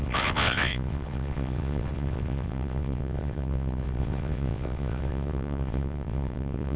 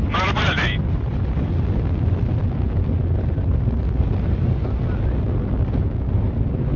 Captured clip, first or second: second